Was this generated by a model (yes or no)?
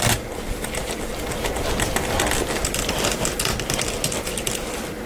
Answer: no